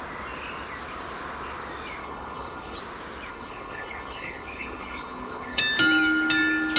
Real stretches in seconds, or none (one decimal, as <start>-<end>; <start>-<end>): 0.0-2.0; 2.8-3.3; 5.6-6.8